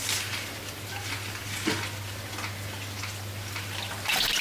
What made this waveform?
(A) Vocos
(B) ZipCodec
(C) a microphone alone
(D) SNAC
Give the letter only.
C